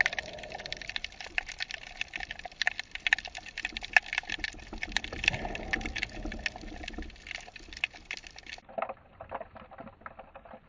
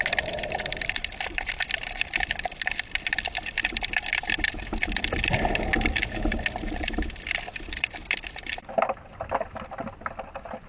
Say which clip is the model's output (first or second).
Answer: second